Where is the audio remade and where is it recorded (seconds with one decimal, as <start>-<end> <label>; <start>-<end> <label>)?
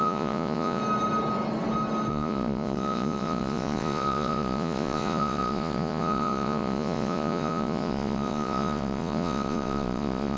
0.0-0.8 remade; 0.8-2.1 recorded; 2.1-10.4 remade